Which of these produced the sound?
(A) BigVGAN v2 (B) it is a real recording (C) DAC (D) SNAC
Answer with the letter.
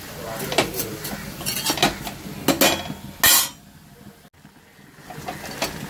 B